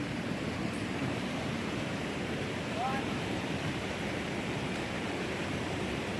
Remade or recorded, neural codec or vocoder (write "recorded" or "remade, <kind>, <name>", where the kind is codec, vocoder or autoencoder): remade, vocoder, BigVGAN v2